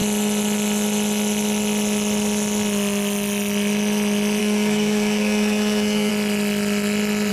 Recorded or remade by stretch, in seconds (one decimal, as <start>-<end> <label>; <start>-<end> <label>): 0.0-4.4 recorded; 4.4-6.1 remade; 6.1-7.3 recorded